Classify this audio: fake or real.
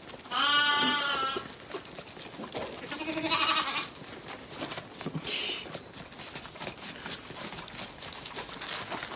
real